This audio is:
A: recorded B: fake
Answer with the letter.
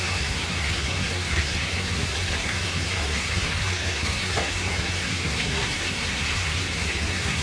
B